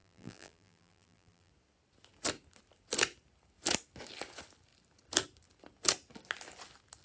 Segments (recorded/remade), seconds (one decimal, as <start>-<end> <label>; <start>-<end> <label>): 0.0-1.5 remade; 1.5-7.0 recorded